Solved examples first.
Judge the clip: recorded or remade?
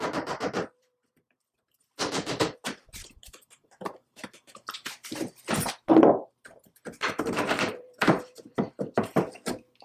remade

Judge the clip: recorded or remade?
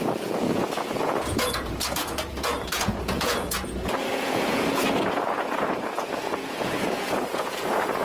remade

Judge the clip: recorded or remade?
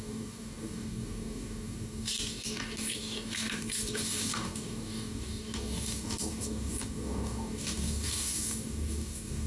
remade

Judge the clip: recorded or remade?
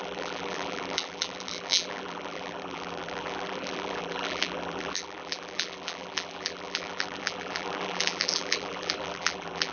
remade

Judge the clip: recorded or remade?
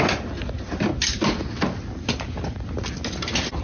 recorded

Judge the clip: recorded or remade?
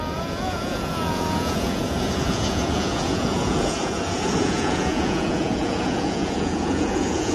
remade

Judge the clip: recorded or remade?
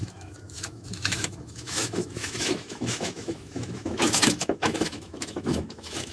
remade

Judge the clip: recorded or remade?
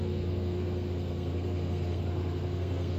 remade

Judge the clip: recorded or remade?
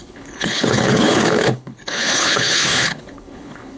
remade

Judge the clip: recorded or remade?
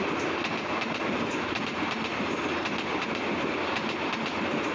recorded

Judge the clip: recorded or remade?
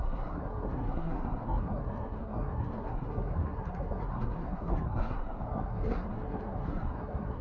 remade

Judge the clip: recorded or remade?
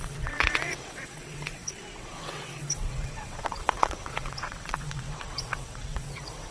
remade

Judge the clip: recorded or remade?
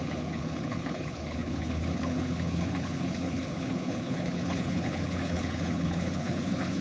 remade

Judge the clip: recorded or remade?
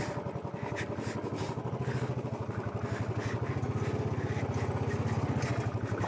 recorded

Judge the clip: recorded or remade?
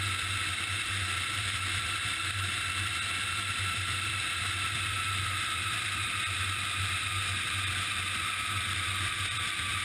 remade